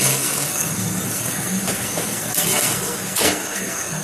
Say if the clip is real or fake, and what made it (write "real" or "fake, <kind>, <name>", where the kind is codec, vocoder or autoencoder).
fake, codec, SNAC